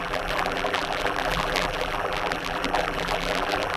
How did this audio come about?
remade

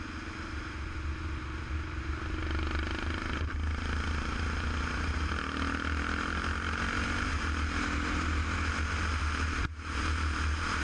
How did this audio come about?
recorded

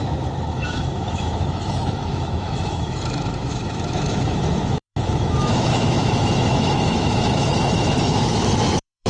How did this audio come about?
remade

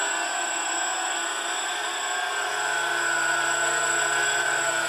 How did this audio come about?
recorded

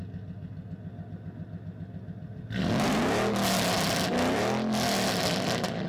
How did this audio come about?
recorded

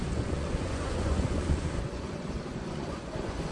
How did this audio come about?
remade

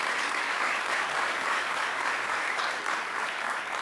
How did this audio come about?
remade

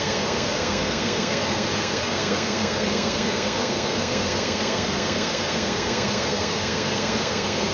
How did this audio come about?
remade